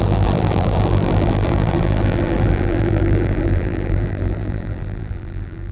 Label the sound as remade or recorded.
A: remade